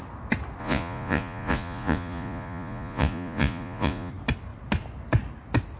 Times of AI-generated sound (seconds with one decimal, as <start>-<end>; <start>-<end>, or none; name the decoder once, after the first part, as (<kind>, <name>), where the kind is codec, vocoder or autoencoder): 0.6-4.1 (vocoder, Vocos)